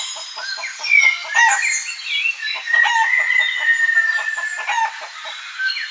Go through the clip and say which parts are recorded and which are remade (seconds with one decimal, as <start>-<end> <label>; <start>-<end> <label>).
0.0-5.9 recorded

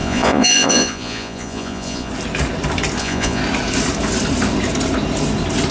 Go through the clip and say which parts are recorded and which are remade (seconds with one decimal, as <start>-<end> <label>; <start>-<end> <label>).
0.0-2.1 remade; 2.1-3.0 recorded; 3.0-3.4 remade; 3.4-5.7 recorded

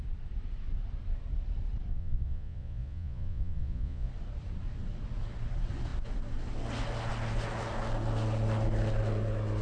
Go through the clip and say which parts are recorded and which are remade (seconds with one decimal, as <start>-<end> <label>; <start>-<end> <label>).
0.0-1.9 recorded; 1.9-4.1 remade; 4.1-9.6 recorded